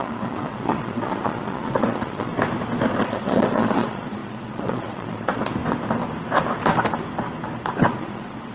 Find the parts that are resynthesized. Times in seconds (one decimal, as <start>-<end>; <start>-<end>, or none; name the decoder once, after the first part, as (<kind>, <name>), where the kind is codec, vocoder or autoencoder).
0.0-2.3 (vocoder, Vocos); 3.0-5.5; 7.9-8.5